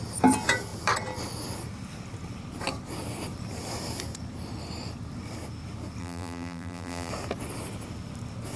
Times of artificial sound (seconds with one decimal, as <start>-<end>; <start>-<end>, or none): 6.0-7.1